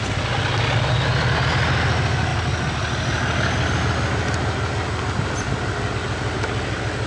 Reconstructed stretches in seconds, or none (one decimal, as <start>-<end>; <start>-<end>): none